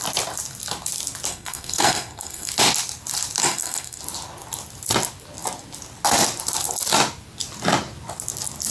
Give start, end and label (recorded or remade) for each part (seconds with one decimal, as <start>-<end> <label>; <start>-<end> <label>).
0.0-1.3 recorded; 1.3-2.5 remade; 2.5-3.4 recorded; 3.4-4.0 remade; 4.0-8.7 recorded